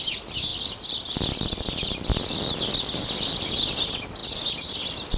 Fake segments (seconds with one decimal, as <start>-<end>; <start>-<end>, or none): none

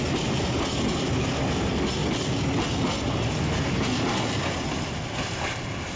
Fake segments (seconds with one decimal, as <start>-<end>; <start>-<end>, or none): none

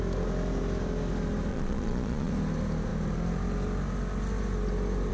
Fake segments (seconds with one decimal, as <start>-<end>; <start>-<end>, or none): 1.5-2.3

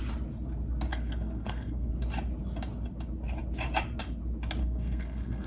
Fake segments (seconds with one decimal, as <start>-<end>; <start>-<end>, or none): 0.9-1.9; 4.6-5.5

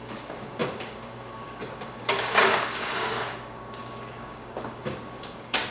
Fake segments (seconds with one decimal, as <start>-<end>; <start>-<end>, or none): 0.0-5.7

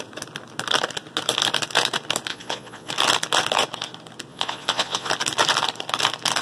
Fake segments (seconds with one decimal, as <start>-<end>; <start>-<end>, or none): 2.3-2.9; 4.3-5.1